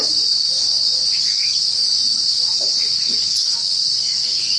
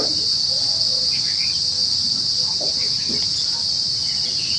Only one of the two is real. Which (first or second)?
second